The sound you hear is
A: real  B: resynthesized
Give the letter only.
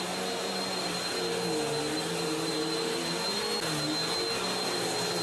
A